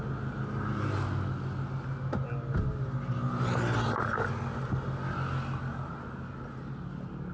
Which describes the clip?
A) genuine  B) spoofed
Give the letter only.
A